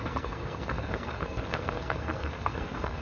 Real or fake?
fake